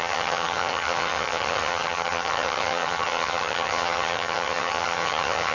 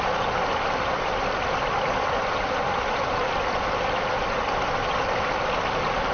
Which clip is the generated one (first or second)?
first